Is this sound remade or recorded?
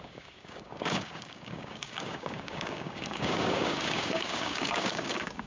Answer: remade